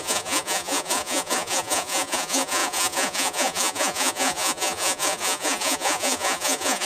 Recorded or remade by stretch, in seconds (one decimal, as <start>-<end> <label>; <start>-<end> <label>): 0.0-6.9 remade